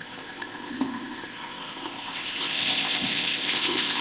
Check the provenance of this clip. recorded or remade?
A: remade